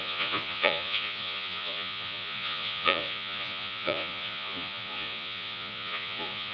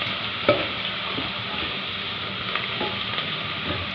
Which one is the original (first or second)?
second